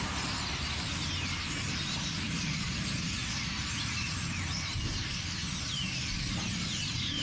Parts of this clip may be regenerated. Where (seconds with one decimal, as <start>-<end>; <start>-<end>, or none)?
0.0-3.2; 3.8-5.4; 6.4-7.2